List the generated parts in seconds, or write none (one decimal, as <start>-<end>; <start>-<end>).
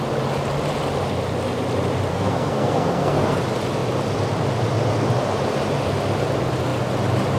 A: 2.1-3.4